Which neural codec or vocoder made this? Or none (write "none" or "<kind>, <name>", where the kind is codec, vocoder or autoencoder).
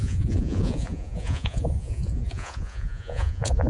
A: vocoder, Vocos